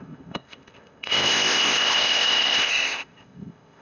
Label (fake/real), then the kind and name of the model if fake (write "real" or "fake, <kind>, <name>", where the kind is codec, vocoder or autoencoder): fake, codec, ZipCodec